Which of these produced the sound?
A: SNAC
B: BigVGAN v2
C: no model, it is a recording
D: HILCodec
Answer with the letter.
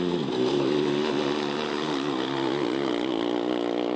C